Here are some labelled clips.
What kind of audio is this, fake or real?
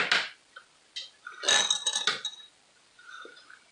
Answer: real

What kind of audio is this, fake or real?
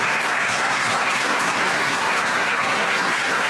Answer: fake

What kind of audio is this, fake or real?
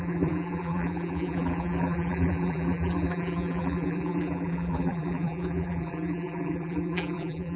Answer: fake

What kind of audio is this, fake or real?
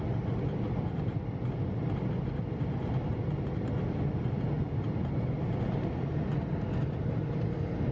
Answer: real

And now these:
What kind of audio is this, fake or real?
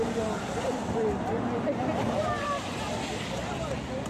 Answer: real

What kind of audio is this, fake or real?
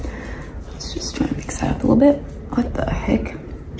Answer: real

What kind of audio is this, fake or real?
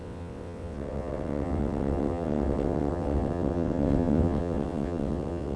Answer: fake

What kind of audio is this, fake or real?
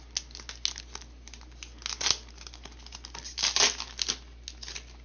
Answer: real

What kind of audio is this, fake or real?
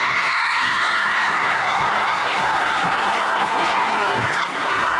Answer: fake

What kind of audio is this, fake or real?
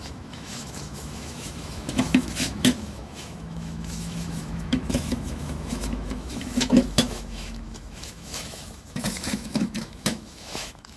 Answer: fake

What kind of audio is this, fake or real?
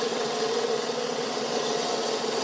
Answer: fake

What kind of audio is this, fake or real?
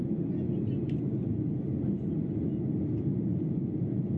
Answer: real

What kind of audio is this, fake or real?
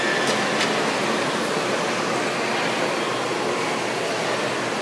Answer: real